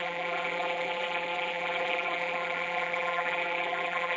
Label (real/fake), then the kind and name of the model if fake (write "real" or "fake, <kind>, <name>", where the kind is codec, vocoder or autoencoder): fake, vocoder, BigVGAN v2